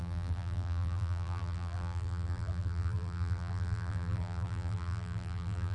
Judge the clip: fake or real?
fake